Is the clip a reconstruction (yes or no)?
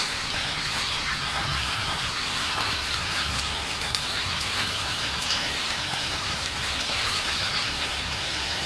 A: yes